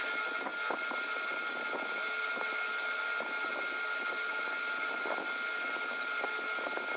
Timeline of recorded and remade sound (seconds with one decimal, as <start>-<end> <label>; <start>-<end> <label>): 0.0-7.0 recorded